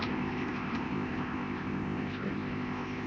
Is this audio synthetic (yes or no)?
yes